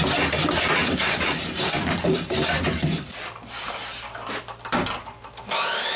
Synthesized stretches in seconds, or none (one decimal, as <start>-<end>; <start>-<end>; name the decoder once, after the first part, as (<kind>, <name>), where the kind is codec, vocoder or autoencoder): 0.8-4.4 (vocoder, BigVGAN v2)